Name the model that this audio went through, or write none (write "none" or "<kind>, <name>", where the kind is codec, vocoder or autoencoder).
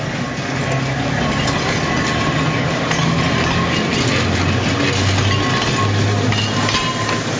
none